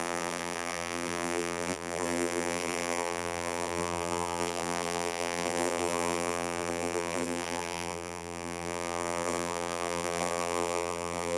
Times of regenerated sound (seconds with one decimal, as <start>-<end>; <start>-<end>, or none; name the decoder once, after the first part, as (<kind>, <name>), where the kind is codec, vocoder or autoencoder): 0.0-11.4 (vocoder, BigVGAN v2)